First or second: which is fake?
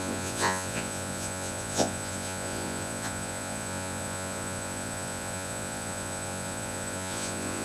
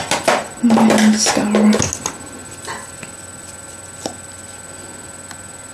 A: first